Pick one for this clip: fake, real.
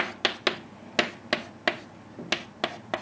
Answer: real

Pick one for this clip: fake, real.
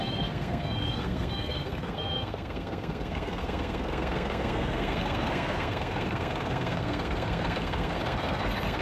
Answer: fake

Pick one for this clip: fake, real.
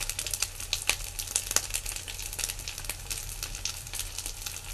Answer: real